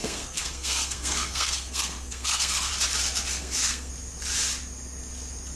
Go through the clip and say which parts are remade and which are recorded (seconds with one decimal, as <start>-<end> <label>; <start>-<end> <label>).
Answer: 0.0-2.7 remade; 2.7-3.3 recorded; 3.3-3.9 remade; 3.9-5.6 recorded